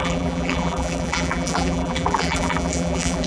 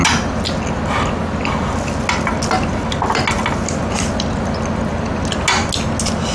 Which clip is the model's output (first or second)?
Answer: first